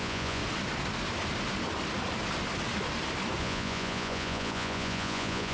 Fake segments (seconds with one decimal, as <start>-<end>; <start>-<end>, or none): 0.0-0.4; 3.4-5.5